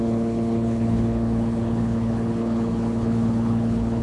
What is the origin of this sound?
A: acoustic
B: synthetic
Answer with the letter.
B